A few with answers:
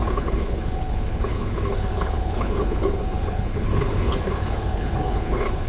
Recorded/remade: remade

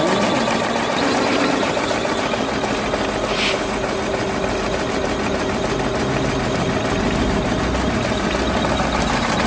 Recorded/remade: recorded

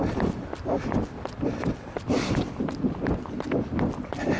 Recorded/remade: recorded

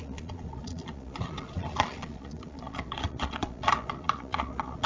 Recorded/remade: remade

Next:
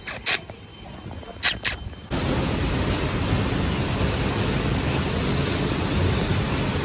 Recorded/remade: recorded